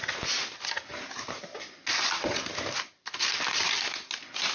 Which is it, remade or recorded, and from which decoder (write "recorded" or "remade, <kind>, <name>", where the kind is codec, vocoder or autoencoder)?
recorded